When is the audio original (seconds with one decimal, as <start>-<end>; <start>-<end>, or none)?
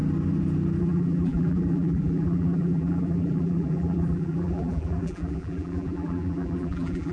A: 0.0-0.8